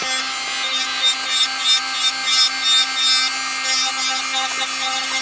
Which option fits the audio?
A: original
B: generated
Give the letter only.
A